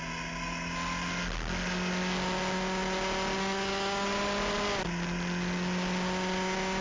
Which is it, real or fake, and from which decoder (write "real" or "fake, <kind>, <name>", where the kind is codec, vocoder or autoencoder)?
real